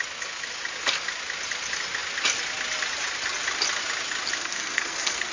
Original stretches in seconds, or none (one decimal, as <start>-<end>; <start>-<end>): 0.0-4.4